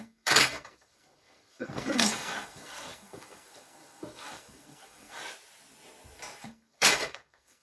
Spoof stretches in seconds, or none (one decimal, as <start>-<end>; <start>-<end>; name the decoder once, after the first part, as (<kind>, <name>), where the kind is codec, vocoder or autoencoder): 0.0-5.2 (codec, SNAC); 6.4-7.6

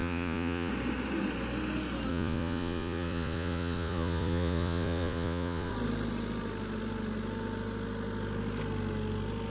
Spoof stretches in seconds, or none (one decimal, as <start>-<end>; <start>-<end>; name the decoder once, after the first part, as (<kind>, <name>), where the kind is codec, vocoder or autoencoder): 0.0-0.7 (vocoder, Vocos); 2.1-5.7

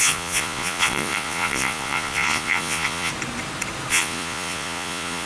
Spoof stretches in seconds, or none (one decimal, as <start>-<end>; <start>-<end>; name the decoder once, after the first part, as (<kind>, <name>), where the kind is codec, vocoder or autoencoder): 0.0-3.1 (vocoder, Vocos); 3.9-5.3